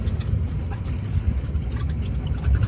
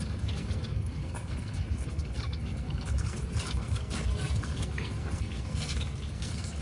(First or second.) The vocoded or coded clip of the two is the second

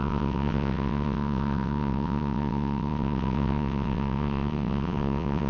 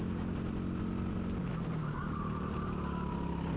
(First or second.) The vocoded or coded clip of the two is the first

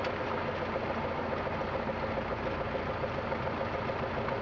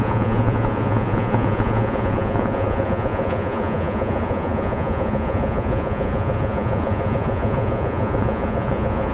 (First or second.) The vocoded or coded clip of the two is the second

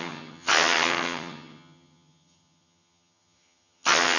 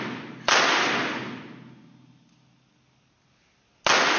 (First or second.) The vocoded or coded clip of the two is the first